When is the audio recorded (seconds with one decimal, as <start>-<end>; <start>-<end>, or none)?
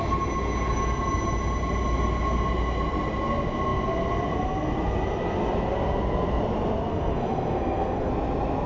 0.0-6.9; 8.1-8.7